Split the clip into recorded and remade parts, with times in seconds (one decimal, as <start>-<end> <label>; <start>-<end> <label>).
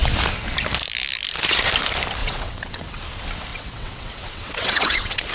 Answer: 0.0-2.2 recorded; 2.2-3.0 remade; 3.0-3.5 recorded; 3.5-5.3 remade